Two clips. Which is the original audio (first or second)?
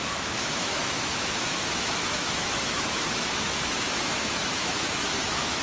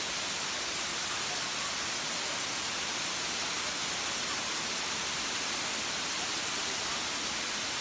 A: second